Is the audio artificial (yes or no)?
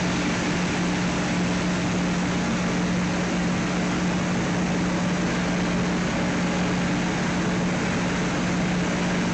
no